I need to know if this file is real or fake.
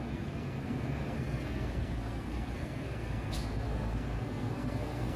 fake